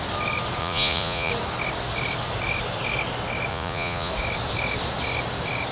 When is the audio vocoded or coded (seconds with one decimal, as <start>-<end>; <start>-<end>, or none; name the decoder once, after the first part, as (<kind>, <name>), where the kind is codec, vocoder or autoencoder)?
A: 0.6-1.3 (vocoder, Vocos); 3.5-4.1

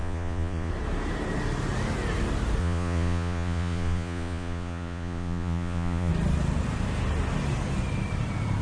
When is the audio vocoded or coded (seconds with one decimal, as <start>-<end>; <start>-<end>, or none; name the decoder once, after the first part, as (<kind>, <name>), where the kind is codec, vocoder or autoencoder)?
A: 0.0-0.7 (vocoder, Vocos); 2.6-6.1

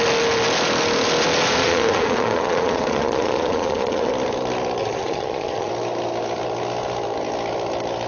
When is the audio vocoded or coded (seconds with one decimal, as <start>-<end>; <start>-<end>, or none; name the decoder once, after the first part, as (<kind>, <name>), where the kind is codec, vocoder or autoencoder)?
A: 1.6-4.1 (vocoder, Vocos); 4.8-5.7

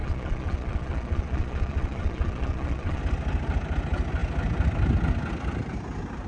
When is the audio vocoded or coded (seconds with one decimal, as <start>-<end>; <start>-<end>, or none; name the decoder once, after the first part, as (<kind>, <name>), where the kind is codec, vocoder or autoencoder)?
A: 0.0-3.0 (vocoder, Vocos)